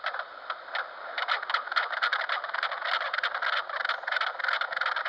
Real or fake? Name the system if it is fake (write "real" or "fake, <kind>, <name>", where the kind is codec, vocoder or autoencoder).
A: real